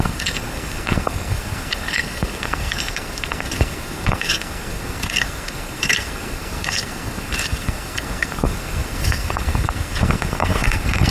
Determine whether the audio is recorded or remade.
remade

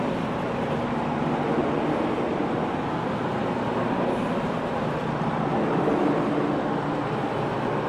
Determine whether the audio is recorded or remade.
recorded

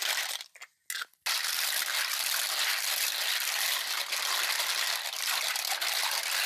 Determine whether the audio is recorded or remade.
recorded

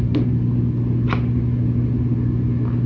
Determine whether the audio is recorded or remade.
recorded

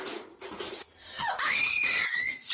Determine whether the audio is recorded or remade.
remade